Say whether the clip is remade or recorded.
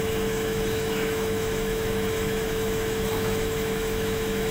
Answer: remade